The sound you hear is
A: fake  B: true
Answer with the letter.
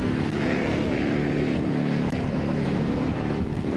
A